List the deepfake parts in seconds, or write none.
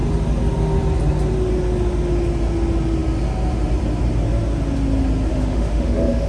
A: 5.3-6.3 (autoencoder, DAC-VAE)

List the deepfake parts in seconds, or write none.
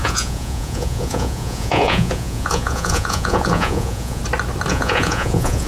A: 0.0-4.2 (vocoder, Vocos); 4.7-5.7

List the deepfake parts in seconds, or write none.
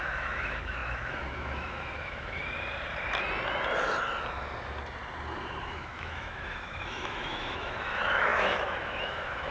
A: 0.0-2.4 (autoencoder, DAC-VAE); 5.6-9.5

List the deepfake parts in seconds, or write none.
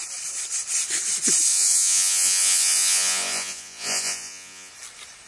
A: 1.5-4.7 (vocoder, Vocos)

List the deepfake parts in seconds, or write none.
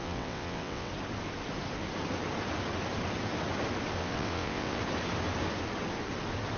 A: 0.0-0.9 (vocoder, WaveNeXt); 4.0-4.8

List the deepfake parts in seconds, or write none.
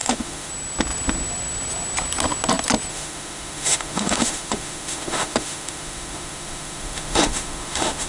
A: 0.0-0.5 (autoencoder, DAC-VAE); 2.9-8.1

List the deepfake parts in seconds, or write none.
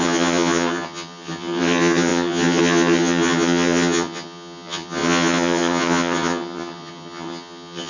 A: 0.0-7.9 (vocoder, HiFi-GAN)